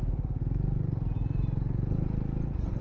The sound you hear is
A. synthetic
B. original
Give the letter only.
B